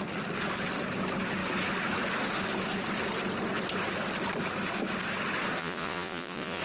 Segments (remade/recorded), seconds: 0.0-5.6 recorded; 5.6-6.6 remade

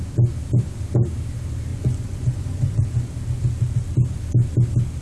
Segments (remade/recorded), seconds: 0.0-1.7 recorded; 1.7-3.1 remade; 3.1-5.0 recorded

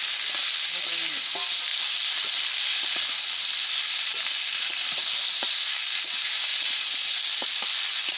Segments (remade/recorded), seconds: 0.0-6.5 recorded; 6.5-7.2 remade; 7.2-8.2 recorded

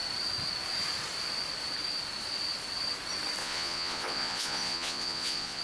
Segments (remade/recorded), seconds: 0.0-3.4 recorded; 3.4-5.6 remade

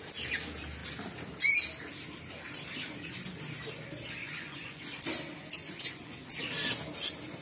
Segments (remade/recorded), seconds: 0.0-4.2 recorded; 4.2-4.8 remade; 4.8-5.6 recorded; 5.6-6.1 remade; 6.1-7.4 recorded